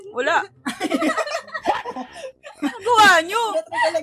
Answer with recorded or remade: recorded